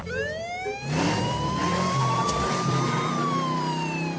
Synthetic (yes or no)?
yes